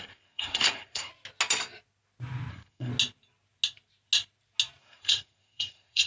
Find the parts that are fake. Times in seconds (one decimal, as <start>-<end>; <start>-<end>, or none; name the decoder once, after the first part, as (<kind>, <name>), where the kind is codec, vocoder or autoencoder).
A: 0.0-1.1 (codec, SNAC); 2.5-2.9; 4.8-6.1